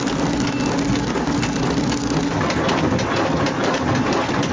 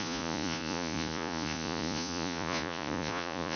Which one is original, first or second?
first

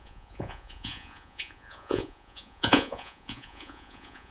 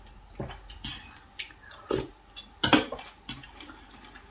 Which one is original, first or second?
second